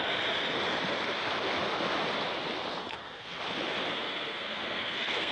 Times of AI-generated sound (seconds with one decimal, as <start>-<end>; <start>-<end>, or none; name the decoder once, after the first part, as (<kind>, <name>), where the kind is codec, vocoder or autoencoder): 2.8-3.4 (codec, SNAC); 3.9-5.3